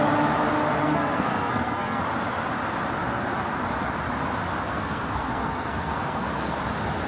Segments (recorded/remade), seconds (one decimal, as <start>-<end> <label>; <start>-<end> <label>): 0.0-0.8 recorded; 0.8-2.0 remade; 2.0-4.7 recorded; 4.7-6.6 remade; 6.6-7.1 recorded